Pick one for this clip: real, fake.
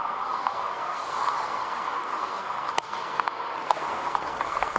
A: fake